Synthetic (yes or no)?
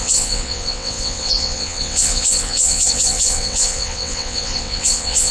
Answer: yes